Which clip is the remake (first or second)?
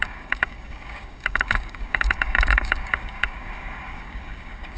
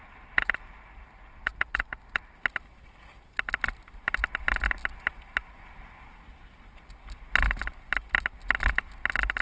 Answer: first